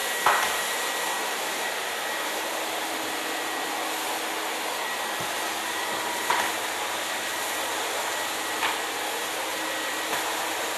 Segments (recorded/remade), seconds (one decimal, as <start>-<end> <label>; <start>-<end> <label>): 0.0-10.8 recorded